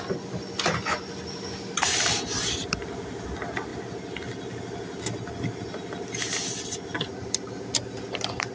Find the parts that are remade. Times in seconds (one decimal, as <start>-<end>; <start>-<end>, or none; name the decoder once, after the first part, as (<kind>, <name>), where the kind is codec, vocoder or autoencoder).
none